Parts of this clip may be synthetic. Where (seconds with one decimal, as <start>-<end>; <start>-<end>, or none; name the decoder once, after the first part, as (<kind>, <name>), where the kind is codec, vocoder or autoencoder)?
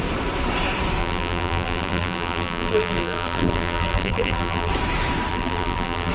1.0-4.7 (vocoder, BigVGAN v2); 5.3-6.1